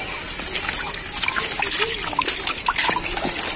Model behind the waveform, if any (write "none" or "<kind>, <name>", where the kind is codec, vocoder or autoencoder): none